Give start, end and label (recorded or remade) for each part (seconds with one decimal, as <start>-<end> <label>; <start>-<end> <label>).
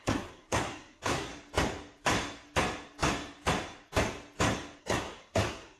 0.0-1.3 remade; 1.3-4.8 recorded; 4.8-5.8 remade